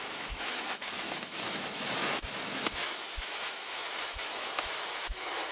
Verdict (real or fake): fake